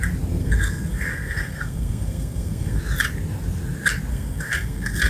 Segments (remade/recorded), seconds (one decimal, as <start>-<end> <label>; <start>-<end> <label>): 0.0-0.4 recorded; 0.4-2.8 remade; 2.8-4.1 recorded; 4.1-5.1 remade